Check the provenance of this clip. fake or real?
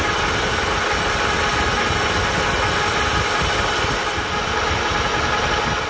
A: real